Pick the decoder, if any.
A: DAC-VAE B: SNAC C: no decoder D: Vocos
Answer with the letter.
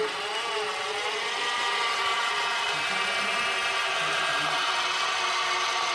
C